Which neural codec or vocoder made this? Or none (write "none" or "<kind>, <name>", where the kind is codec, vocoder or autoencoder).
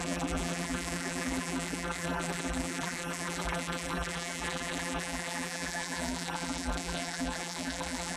vocoder, BigVGAN v2